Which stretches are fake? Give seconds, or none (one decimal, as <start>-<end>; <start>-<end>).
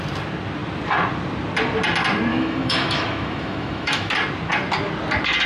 2.3-4.1